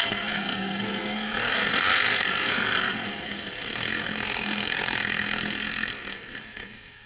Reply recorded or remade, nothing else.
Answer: remade